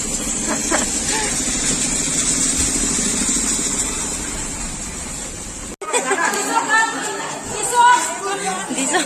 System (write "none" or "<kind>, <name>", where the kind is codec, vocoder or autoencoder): none